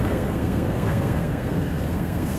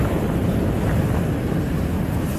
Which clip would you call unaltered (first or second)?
second